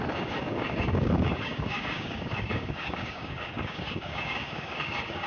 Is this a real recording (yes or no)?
no